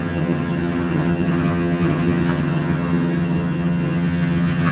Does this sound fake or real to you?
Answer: fake